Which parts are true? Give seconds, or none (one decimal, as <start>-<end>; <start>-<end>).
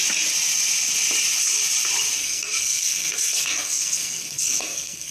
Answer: 0.0-2.2